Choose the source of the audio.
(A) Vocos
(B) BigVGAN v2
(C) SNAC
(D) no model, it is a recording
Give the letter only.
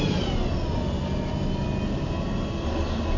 D